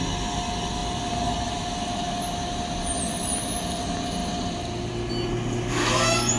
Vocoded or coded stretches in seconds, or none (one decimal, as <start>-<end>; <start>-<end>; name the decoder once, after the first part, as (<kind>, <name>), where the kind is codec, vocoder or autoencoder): none